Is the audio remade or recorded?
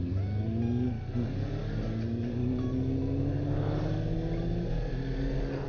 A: recorded